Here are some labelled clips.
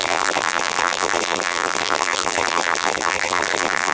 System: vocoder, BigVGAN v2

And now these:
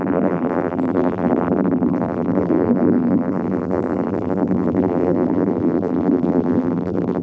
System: vocoder, BigVGAN v2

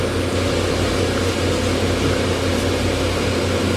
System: none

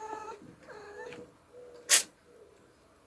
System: none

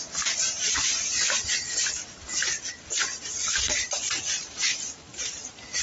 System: vocoder, BigVGAN v2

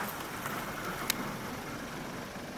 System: none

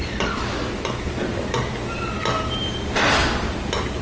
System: vocoder, BigVGAN v2